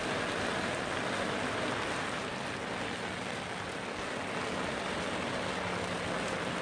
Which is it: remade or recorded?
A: recorded